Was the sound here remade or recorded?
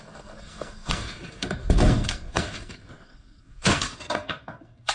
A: remade